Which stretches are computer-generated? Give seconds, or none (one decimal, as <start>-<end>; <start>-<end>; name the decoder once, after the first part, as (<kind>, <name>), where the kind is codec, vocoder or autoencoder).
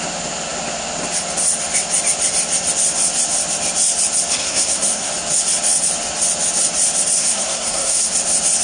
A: 4.4-5.1 (codec, SNAC); 7.2-8.1